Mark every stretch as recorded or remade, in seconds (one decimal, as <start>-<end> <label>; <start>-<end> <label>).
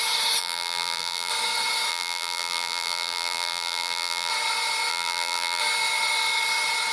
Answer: 0.0-0.4 recorded; 0.4-1.3 remade; 1.3-1.9 recorded; 1.9-4.3 remade; 4.3-4.9 recorded; 4.9-5.6 remade; 5.6-6.9 recorded